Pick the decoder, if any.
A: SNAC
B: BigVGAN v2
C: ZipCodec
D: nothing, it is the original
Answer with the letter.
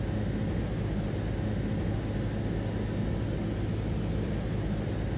D